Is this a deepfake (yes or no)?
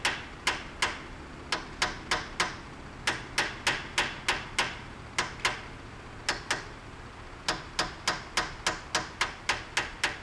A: no